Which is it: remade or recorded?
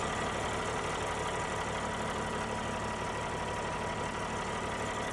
recorded